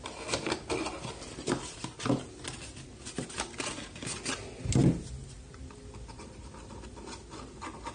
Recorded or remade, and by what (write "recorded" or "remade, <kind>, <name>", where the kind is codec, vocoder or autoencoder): recorded